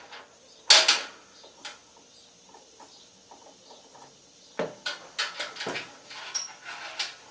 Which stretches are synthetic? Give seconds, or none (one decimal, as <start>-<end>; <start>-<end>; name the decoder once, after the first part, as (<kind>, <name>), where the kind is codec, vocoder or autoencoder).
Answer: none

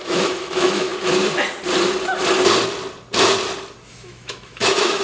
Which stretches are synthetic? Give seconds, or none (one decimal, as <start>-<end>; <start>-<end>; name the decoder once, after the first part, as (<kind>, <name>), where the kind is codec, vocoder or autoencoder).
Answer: 0.0-0.9 (autoencoder, DAC-VAE); 3.9-5.0

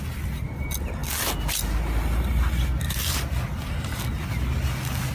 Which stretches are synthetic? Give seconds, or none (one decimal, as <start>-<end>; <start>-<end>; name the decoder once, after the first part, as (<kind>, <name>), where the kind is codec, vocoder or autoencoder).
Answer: none

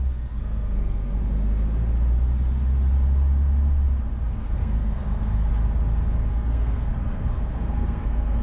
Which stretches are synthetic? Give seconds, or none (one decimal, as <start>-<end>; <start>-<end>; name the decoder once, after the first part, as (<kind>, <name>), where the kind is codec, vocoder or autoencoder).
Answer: 0.0-1.2 (codec, SNAC); 4.3-5.5; 6.3-8.4

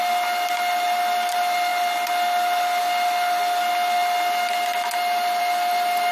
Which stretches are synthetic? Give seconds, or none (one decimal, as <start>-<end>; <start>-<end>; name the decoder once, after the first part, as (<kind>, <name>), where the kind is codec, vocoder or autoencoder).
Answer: none

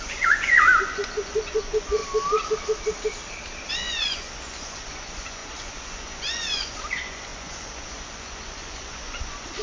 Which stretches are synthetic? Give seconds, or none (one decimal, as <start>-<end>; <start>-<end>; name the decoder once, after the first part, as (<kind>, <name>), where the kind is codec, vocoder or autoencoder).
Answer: 0.0-2.0 (vocoder, Vocos); 3.7-9.6

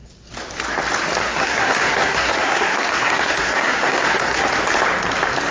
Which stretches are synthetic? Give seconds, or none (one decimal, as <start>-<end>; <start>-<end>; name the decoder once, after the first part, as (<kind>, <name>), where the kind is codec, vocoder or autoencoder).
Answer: 1.2-4.5 (codec, SNAC)